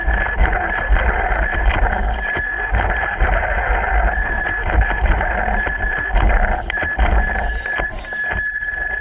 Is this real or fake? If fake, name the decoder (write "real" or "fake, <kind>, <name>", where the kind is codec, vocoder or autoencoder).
real